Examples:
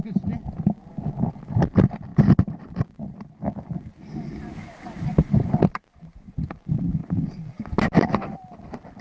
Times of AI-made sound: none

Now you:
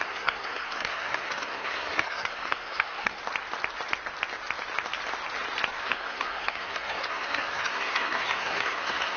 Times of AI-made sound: 0.0-3.2; 5.8-9.2

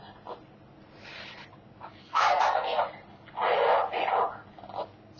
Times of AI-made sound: 2.0-2.8

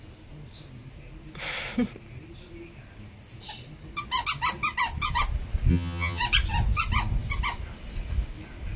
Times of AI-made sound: 5.7-6.2

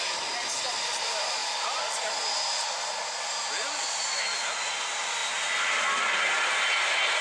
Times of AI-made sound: 5.2-7.2

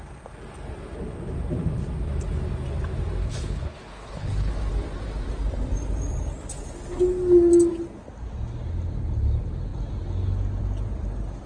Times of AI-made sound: 3.2-4.5